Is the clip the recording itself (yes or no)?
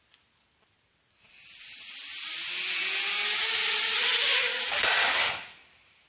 yes